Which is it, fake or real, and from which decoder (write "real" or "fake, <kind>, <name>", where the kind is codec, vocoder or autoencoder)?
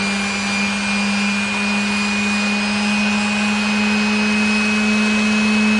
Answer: real